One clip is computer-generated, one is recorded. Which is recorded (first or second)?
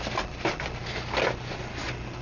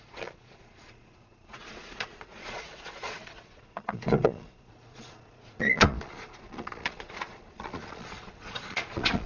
first